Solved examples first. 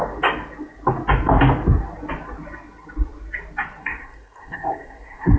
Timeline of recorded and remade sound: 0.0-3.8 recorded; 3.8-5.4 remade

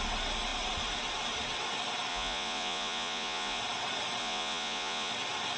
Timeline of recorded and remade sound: 0.0-2.1 recorded; 2.1-3.6 remade; 3.6-4.2 recorded; 4.2-5.1 remade; 5.1-5.6 recorded

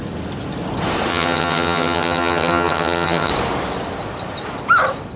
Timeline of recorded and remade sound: 0.0-1.1 recorded; 1.1-3.3 remade; 3.3-5.2 recorded

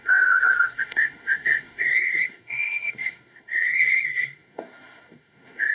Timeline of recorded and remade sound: 0.0-5.7 remade

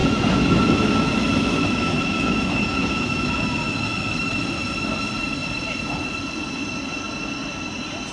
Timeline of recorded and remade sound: 0.0-4.4 remade; 4.4-8.1 recorded

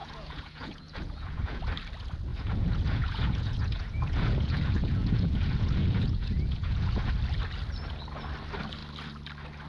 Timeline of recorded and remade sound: 0.0-1.6 remade; 1.6-2.3 recorded; 2.3-7.1 remade; 7.1-9.7 recorded

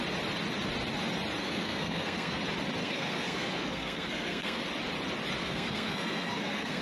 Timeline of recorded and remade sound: 0.0-1.4 recorded; 1.4-2.4 remade; 2.4-2.8 recorded; 2.8-4.6 remade; 4.6-5.4 recorded; 5.4-6.8 remade